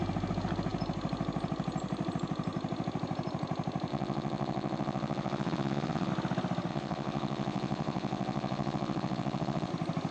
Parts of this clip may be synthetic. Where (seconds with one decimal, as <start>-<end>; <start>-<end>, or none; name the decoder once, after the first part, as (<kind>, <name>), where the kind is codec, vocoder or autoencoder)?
3.9-6.1 (vocoder, WaveNeXt); 6.7-9.7